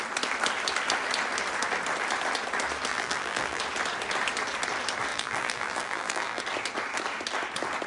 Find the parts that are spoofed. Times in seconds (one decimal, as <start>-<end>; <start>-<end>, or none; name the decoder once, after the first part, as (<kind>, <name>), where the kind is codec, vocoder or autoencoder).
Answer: 2.9-3.6 (vocoder, BigVGAN v2); 5.1-6.4